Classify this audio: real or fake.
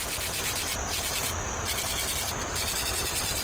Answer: real